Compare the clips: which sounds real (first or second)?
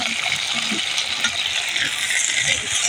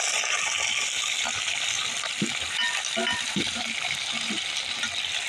first